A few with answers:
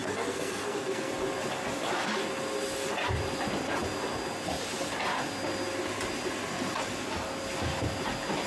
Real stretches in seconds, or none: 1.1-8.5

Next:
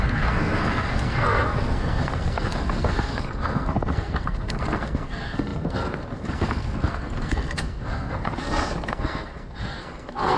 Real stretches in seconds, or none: none

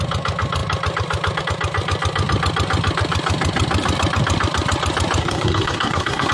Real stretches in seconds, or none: 0.0-5.2

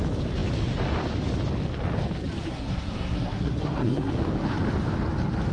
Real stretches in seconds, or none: 0.0-2.5; 4.1-5.5

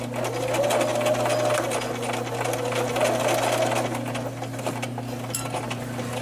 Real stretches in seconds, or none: 0.0-6.2

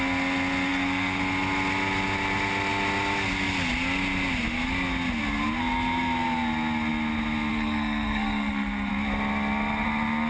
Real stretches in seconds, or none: 0.0-0.7; 1.2-7.5; 8.9-10.3